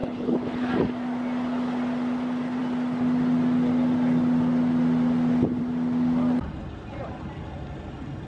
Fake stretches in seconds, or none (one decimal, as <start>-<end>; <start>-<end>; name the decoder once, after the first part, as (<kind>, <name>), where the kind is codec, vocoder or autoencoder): 0.0-0.7 (codec, HILCodec)